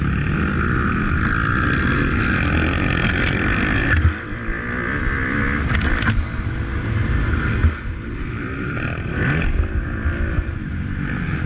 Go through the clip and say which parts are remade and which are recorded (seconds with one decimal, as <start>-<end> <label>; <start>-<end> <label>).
0.0-6.7 recorded; 6.7-7.4 remade; 7.4-11.5 recorded